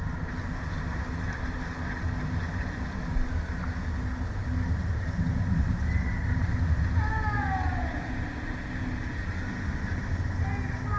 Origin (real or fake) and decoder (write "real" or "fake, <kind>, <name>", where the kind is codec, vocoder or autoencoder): real